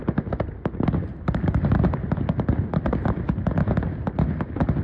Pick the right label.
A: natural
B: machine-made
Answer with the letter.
A